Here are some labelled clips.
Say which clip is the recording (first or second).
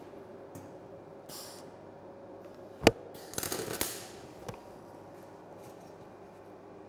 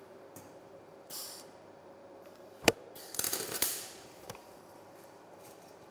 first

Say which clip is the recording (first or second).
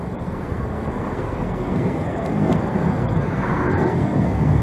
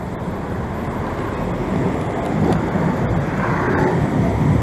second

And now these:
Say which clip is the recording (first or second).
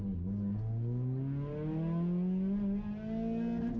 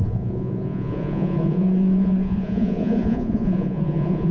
first